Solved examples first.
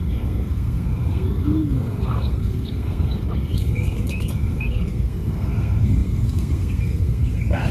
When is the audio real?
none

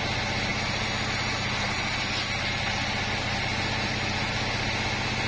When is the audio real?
0.0-5.3

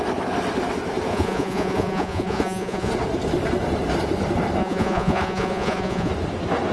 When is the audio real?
0.0-1.1; 2.9-4.6; 6.1-6.7

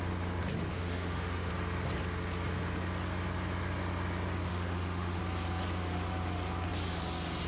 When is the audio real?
0.0-0.7; 1.5-4.5; 5.2-7.5

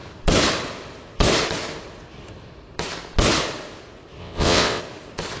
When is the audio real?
0.0-4.2; 4.8-5.4

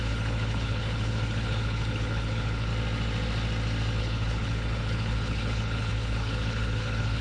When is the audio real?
2.7-4.0